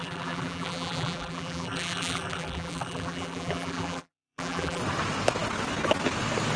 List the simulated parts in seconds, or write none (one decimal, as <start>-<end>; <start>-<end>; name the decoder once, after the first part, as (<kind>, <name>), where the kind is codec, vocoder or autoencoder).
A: 0.0-4.8 (vocoder, BigVGAN v2)